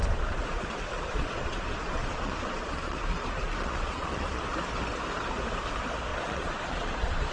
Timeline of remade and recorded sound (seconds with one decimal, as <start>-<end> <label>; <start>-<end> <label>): 0.0-4.4 remade; 4.4-6.1 recorded; 6.1-7.3 remade